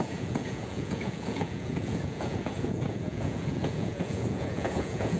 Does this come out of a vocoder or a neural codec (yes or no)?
yes